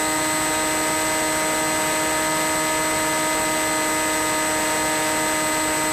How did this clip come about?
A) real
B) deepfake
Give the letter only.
A